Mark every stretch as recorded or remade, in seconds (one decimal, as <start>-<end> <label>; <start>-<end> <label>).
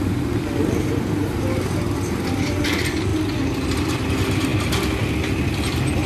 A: 0.0-6.1 recorded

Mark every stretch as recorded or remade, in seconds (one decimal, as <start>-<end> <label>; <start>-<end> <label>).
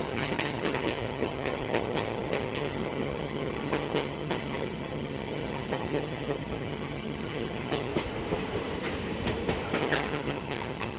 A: 0.0-7.9 remade; 7.9-9.8 recorded; 9.8-11.0 remade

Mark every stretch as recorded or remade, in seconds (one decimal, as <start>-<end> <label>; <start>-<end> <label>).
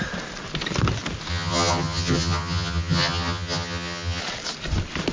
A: 0.0-1.3 recorded; 1.3-4.2 remade; 4.2-5.1 recorded